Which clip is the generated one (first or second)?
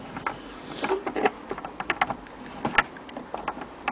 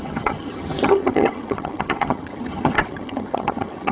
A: second